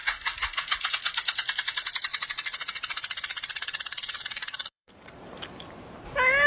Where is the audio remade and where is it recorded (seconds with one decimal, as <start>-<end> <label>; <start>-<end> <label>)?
0.0-2.1 recorded; 2.1-4.9 remade; 4.9-6.5 recorded